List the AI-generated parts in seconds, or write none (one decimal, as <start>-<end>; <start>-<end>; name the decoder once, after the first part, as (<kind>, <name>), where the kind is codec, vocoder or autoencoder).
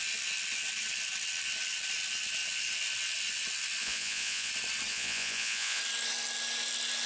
3.8-4.5 (vocoder, Vocos); 4.9-5.8